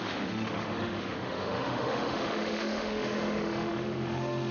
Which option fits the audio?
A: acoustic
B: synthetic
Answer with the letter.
B